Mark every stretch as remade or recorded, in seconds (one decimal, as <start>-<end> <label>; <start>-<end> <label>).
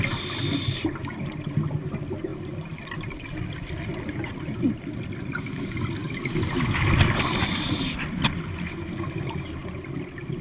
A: 0.0-10.4 recorded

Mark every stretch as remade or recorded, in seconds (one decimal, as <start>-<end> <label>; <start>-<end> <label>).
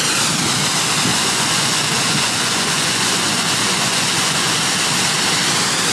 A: 0.0-1.1 recorded; 1.1-4.6 remade; 4.6-5.9 recorded